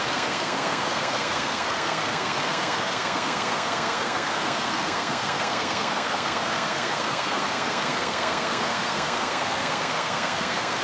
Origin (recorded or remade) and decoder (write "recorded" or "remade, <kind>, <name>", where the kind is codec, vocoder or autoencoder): remade, codec, SNAC